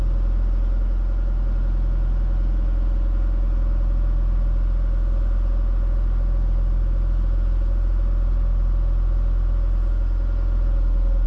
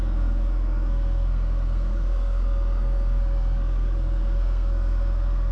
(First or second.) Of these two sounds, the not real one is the second